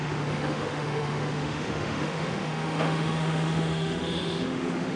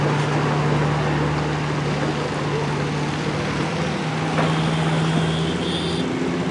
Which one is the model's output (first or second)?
first